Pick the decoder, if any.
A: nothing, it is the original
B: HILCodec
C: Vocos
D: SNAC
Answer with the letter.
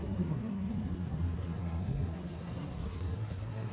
D